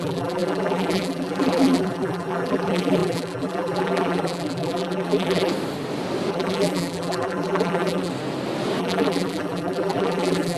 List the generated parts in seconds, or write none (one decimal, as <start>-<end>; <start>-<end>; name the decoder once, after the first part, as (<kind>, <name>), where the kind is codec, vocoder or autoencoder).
0.0-5.5 (vocoder, BigVGAN v2); 6.3-8.1; 8.8-10.6